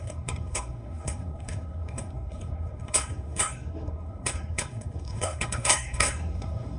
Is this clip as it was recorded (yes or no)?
no